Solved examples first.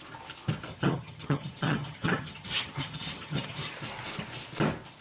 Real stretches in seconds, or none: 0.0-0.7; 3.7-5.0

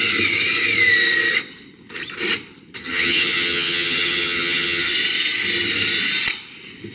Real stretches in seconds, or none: 0.0-2.8; 4.9-6.9

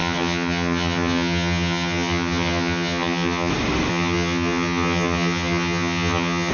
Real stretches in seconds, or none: 3.5-3.9